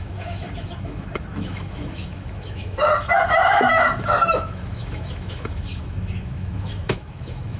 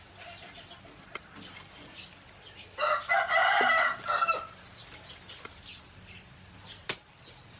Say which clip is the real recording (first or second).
second